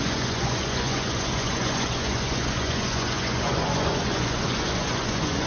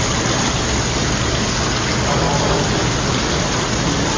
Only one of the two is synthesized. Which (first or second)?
first